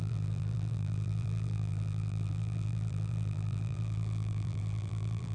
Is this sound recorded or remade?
remade